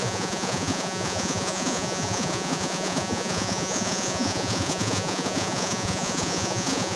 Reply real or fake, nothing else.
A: fake